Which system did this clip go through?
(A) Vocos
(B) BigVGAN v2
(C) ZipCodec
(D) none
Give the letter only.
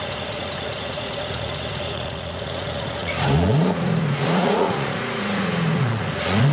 A